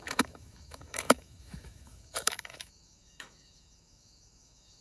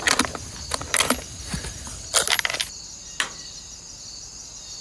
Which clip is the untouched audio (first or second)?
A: second